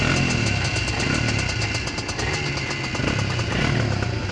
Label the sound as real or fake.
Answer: real